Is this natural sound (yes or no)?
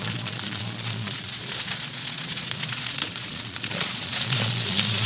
no